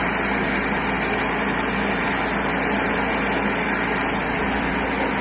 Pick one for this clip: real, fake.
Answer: real